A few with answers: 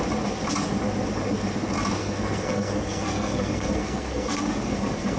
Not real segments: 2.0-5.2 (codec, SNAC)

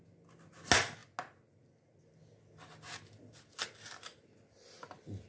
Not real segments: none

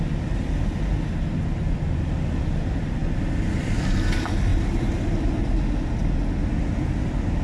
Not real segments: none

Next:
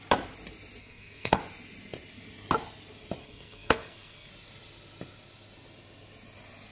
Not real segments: 0.8-1.4 (codec, SNAC); 3.2-4.3